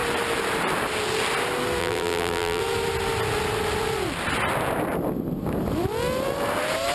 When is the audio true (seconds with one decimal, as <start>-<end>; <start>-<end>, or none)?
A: 0.0-1.8; 2.6-6.9